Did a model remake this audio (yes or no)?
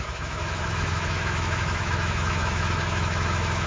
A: yes